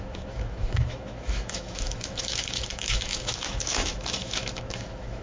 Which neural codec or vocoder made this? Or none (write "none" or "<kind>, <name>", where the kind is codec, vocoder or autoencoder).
autoencoder, DAC-VAE